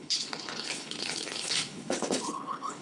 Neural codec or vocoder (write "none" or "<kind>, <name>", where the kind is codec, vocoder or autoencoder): codec, HILCodec